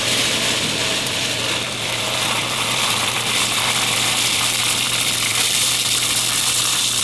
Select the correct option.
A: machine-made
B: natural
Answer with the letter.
A